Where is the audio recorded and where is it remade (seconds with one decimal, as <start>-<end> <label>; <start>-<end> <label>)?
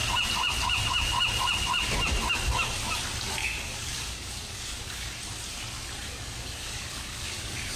0.0-3.4 recorded; 3.4-5.2 remade; 5.2-6.1 recorded; 6.1-7.8 remade